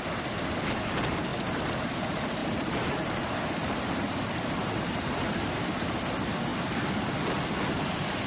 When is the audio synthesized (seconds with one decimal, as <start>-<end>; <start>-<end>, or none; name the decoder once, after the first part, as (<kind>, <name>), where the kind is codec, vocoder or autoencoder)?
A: 2.4-3.1 (vocoder, BigVGAN v2); 3.6-5.2